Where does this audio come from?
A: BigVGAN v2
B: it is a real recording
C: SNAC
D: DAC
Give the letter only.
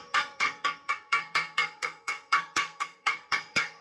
C